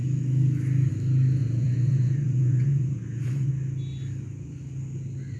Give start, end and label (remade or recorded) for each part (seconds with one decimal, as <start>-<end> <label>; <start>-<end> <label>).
0.0-1.4 recorded; 1.4-3.5 remade; 3.5-5.4 recorded